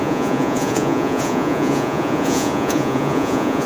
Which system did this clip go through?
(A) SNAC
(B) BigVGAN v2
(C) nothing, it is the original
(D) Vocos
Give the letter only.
D